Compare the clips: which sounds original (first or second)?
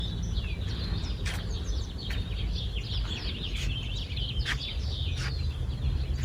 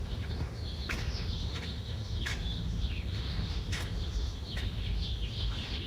first